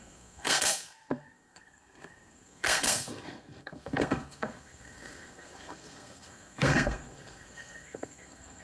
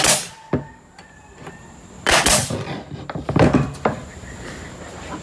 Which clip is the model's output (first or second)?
first